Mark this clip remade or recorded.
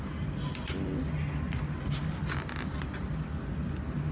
recorded